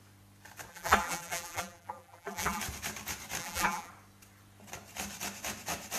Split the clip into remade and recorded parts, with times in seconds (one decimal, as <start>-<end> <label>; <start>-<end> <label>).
0.0-0.7 recorded; 0.7-2.6 remade; 2.6-3.4 recorded; 3.4-3.9 remade; 3.9-6.0 recorded